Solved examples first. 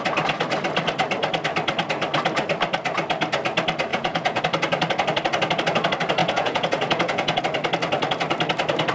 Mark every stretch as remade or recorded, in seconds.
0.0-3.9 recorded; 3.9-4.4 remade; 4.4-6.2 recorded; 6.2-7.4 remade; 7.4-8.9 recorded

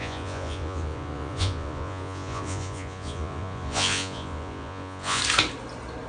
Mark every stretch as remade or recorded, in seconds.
0.0-5.2 remade; 5.2-6.1 recorded

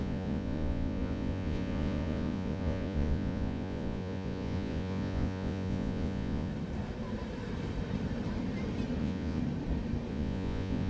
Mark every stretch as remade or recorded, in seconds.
0.0-6.5 remade; 6.5-9.0 recorded; 9.0-9.4 remade; 9.4-10.1 recorded; 10.1-10.9 remade

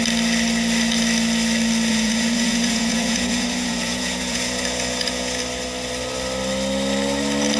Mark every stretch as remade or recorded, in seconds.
0.0-1.9 recorded; 1.9-5.4 remade; 5.4-7.6 recorded

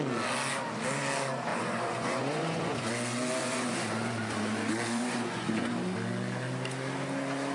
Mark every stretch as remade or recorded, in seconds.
0.0-1.5 recorded; 1.5-2.9 remade; 2.9-3.4 recorded; 3.4-5.7 remade; 5.7-7.5 recorded